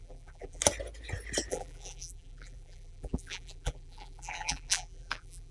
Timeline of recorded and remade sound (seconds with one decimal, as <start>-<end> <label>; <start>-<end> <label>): 0.0-0.6 remade; 0.6-1.5 recorded; 1.5-5.5 remade